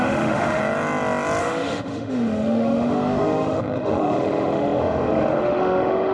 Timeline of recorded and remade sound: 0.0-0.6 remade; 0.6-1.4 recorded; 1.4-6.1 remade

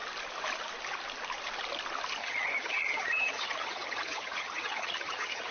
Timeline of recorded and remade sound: 0.0-2.2 recorded; 2.2-5.5 remade

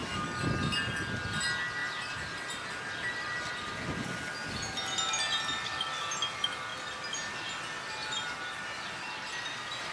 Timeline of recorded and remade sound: 0.0-1.8 recorded; 1.8-2.4 remade; 2.4-8.0 recorded; 8.0-9.0 remade; 9.0-9.9 recorded

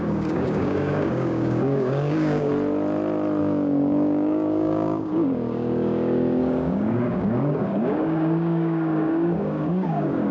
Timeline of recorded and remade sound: 0.0-2.5 remade; 2.5-3.4 recorded; 3.4-10.3 remade

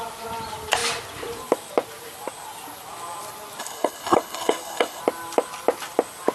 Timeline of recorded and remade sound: 0.0-3.6 recorded; 3.6-5.0 remade; 5.0-6.3 recorded